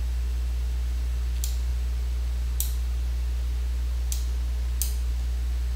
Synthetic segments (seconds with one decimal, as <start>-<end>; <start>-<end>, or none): none